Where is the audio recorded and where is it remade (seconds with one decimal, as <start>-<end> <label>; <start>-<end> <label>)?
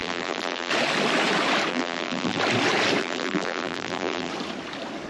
0.0-0.7 remade; 0.7-1.7 recorded; 1.7-2.4 remade; 2.4-3.0 recorded; 3.0-4.3 remade; 4.3-5.1 recorded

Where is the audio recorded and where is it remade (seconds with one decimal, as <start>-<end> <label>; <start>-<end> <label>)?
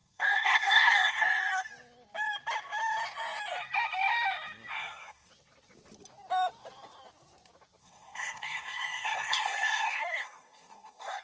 0.0-1.7 remade; 1.7-4.7 recorded; 4.7-5.3 remade; 5.3-7.8 recorded; 7.8-11.2 remade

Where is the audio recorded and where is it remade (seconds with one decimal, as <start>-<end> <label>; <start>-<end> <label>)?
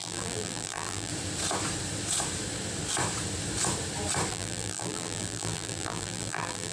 0.0-1.1 remade; 1.1-4.3 recorded; 4.3-6.7 remade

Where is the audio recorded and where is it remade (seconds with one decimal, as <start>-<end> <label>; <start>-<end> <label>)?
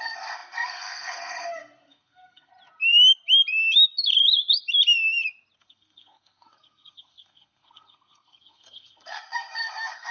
0.0-2.5 remade; 2.5-5.6 recorded; 5.6-10.1 remade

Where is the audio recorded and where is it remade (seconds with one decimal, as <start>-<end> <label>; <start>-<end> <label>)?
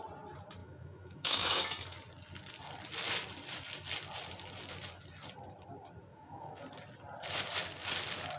0.0-0.6 recorded; 0.6-1.6 remade; 1.6-6.1 recorded; 6.1-6.6 remade; 6.6-8.4 recorded